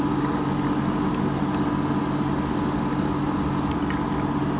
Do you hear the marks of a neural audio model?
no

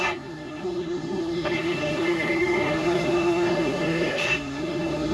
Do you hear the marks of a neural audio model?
yes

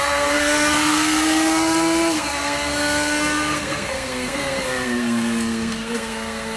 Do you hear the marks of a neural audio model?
yes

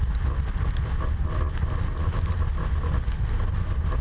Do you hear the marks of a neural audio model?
no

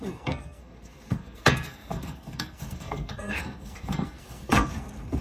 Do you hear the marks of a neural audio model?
yes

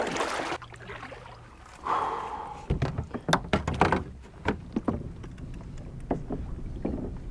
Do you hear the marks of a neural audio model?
no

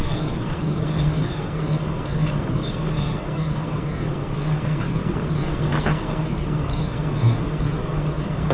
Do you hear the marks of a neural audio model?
yes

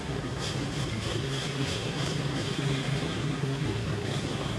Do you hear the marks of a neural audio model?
yes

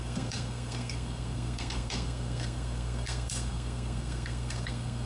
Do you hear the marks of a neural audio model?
yes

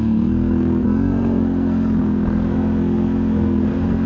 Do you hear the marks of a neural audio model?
yes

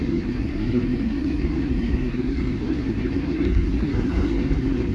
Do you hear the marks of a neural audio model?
yes